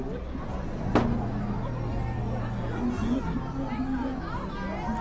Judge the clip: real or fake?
real